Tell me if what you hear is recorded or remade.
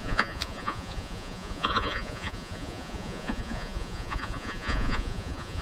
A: remade